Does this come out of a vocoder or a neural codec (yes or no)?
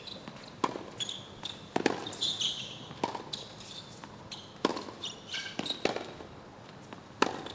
no